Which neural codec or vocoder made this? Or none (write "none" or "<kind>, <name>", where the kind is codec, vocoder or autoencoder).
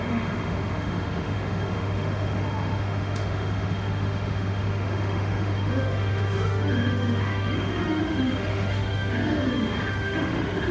autoencoder, DAC-VAE